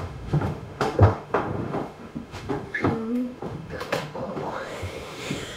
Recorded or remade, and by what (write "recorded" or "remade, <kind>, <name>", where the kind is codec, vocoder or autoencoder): remade, autoencoder, DAC-VAE